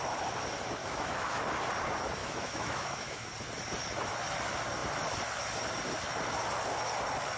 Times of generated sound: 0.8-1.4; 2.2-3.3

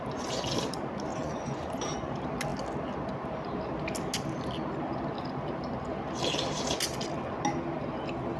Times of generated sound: 1.1-2.1

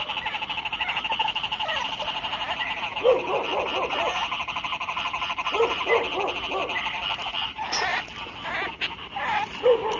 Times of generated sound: 0.0-6.6; 7.3-7.9; 9.0-10.0

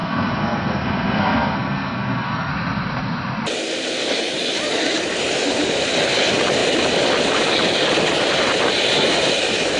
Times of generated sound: 0.0-2.5

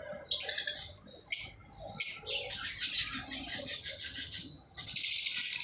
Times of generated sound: 3.5-4.9